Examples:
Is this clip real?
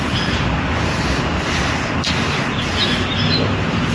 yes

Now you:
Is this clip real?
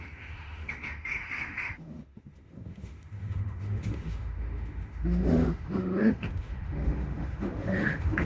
no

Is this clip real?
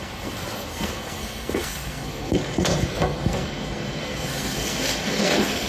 no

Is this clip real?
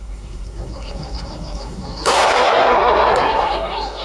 no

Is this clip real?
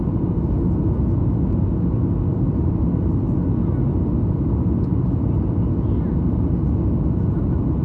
yes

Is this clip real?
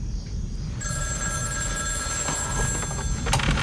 yes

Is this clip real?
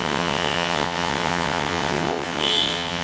no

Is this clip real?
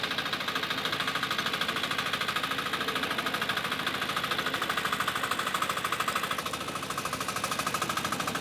yes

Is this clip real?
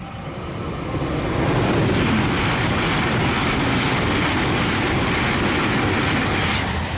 yes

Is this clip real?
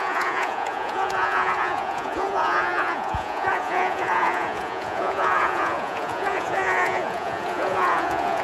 no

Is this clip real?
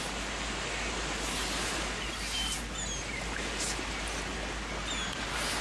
yes